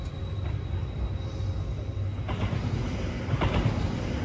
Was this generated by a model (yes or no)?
no